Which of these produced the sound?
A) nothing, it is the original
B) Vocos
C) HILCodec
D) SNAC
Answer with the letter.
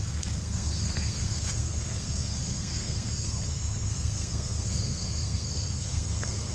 D